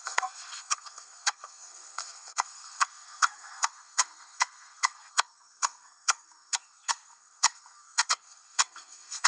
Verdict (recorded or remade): remade